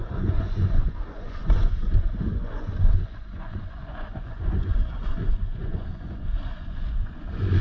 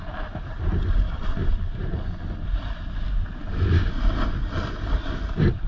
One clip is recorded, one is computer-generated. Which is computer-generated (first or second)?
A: first